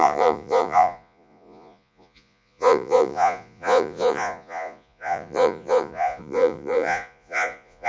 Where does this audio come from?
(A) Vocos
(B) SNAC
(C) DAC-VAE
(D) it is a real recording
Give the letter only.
A